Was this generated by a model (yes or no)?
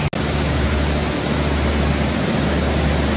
no